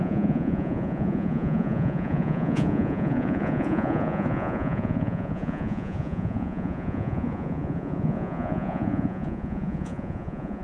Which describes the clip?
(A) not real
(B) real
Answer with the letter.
A